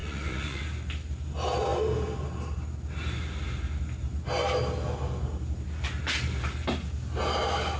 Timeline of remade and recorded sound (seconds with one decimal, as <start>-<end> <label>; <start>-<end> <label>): 0.0-0.6 remade; 0.6-7.8 recorded